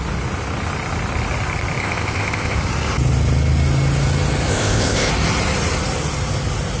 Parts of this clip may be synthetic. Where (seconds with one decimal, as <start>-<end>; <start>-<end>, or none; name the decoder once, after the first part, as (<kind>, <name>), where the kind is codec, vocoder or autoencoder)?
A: 1.8-2.6 (codec, ZipCodec); 4.5-5.1